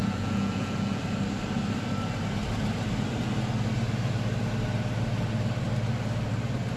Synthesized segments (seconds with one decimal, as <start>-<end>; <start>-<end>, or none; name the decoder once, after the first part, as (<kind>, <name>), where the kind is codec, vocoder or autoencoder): 0.0-1.0 (vocoder, Vocos)